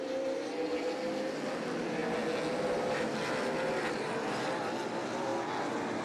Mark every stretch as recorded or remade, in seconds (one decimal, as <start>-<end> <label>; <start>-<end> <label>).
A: 0.0-6.0 recorded

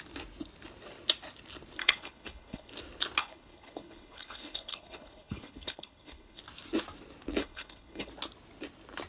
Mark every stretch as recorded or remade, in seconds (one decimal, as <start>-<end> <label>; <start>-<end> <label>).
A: 0.0-1.8 recorded; 1.8-2.7 remade; 2.7-3.2 recorded; 3.2-6.4 remade; 6.4-7.4 recorded; 7.4-8.1 remade; 8.1-9.1 recorded

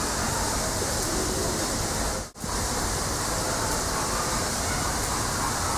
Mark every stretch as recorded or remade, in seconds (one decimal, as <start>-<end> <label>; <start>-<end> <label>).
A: 0.0-5.8 recorded

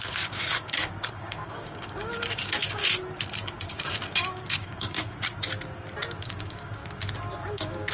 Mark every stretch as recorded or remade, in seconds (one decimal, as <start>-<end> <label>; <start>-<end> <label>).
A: 0.0-2.8 remade; 2.8-3.7 recorded; 3.7-5.3 remade; 5.3-6.2 recorded; 6.2-6.8 remade; 6.8-7.5 recorded; 7.5-7.9 remade

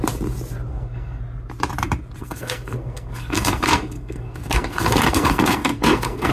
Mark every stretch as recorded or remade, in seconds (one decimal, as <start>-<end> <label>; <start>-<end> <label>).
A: 0.0-0.7 recorded; 0.7-1.2 remade; 1.2-2.2 recorded; 2.2-6.3 remade

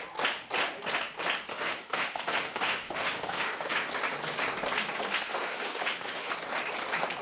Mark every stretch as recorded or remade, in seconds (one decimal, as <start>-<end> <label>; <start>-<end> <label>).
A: 0.0-1.5 recorded; 1.5-3.9 remade; 3.9-5.3 recorded; 5.3-6.3 remade; 6.3-7.2 recorded